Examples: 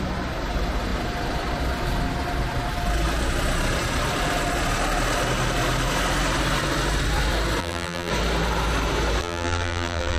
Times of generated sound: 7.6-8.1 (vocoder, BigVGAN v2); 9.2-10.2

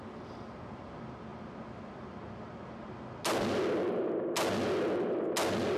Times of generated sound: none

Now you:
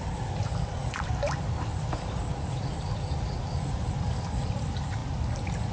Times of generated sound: 0.0-2.7 (vocoder, BigVGAN v2); 3.4-5.0

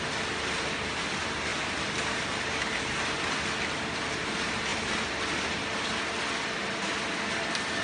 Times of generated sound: none